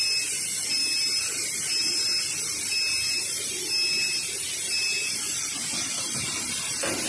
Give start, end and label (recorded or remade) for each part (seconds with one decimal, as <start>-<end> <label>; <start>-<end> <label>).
0.0-5.6 recorded; 5.6-6.2 remade; 6.2-7.1 recorded